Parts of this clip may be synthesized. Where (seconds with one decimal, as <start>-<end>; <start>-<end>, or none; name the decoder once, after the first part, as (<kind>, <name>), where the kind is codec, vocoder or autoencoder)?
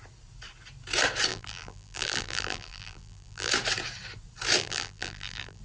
1.3-3.5 (vocoder, BigVGAN v2); 4.6-5.6